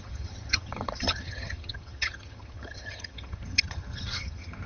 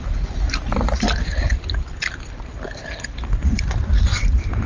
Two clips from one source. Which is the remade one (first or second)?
first